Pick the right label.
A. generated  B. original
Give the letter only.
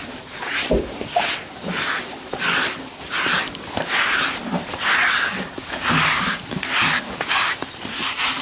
B